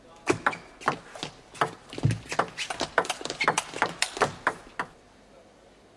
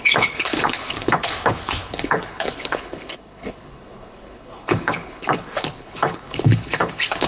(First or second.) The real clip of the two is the first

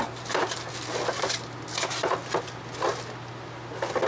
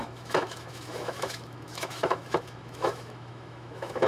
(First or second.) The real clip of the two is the first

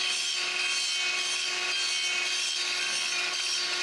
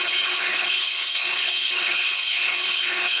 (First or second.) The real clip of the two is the first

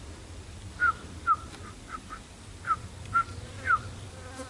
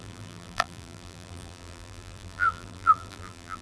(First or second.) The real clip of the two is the first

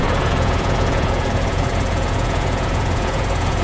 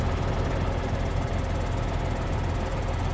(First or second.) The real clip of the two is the second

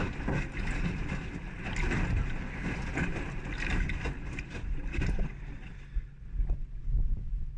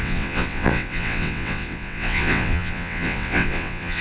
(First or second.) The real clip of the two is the first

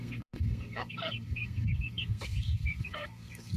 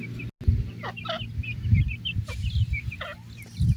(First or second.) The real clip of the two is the second